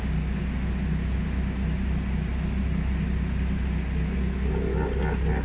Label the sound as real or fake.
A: real